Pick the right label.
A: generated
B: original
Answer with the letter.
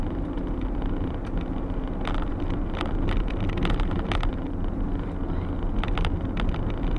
B